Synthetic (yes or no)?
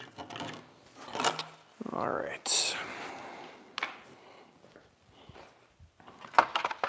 no